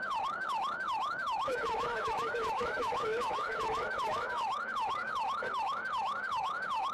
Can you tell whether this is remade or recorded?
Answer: remade